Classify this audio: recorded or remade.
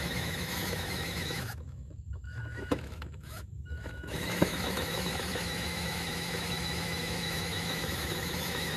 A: remade